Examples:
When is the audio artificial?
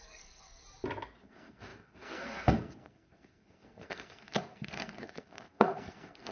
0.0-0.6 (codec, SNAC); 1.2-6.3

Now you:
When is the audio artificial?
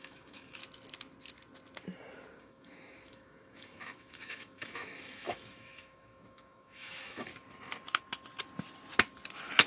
0.0-0.6 (autoencoder, DAC-VAE); 2.4-7.3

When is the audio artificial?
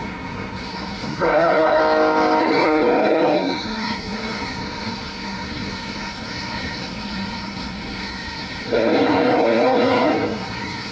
0.0-1.8 (codec, SNAC); 2.4-10.9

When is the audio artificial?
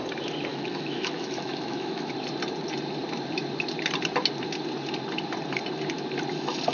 0.5-2.1 (autoencoder, DAC-VAE)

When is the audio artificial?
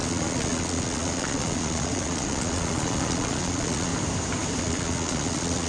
0.0-3.9 (vocoder, Vocos); 4.6-5.7